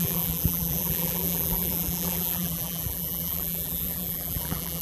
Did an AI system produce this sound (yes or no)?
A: yes